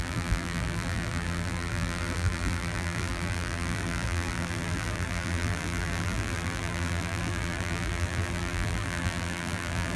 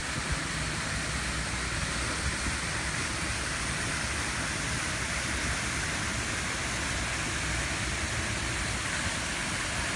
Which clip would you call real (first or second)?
second